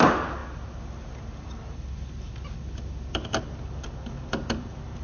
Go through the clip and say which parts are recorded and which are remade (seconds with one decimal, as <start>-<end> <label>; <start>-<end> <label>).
0.0-5.0 recorded